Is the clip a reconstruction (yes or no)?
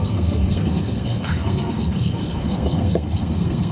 yes